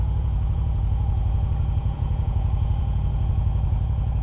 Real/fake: fake